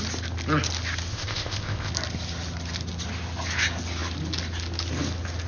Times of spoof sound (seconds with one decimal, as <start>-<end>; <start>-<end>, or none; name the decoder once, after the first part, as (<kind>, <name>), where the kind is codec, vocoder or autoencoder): 1.1-1.9 (codec, ZipCodec)